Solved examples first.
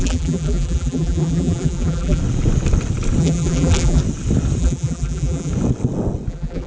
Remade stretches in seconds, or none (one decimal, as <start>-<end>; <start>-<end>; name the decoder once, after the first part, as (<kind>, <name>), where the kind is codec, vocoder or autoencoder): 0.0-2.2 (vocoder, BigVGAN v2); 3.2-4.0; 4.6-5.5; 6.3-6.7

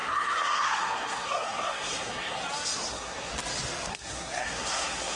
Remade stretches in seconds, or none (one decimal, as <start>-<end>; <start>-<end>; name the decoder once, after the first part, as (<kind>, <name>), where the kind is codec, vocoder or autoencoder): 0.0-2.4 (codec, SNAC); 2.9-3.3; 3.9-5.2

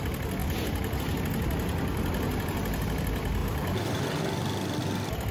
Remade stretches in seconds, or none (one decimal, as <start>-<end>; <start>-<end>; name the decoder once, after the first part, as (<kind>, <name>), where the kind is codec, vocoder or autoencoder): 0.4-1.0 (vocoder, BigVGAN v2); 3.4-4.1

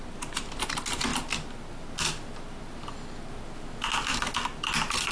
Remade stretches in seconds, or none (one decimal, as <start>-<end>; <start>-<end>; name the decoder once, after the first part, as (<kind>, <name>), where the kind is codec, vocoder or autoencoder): none

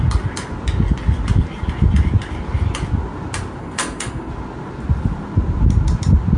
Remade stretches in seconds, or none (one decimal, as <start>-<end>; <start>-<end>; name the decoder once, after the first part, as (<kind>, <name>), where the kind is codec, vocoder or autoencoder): 3.6-4.3 (codec, SNAC)